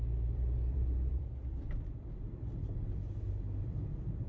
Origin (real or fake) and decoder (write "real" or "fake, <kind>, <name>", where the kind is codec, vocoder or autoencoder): fake, vocoder, BigVGAN v2